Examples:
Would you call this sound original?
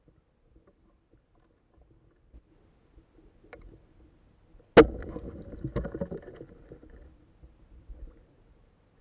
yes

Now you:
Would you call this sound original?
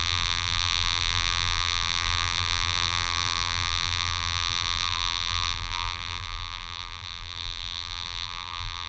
no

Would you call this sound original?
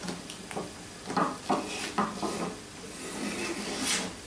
yes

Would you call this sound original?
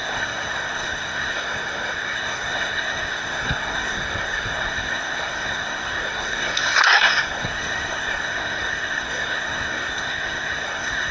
no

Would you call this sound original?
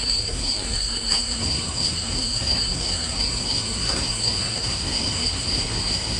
no